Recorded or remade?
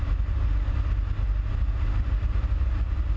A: recorded